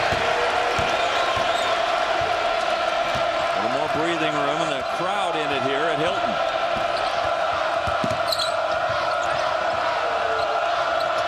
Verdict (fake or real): real